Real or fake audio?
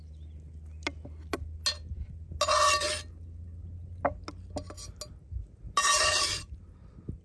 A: real